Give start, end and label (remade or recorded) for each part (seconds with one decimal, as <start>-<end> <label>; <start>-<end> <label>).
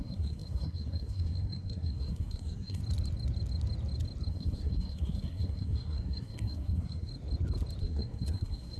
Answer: 0.0-2.8 remade; 2.8-4.3 recorded; 4.3-7.1 remade; 7.1-7.8 recorded; 7.8-8.8 remade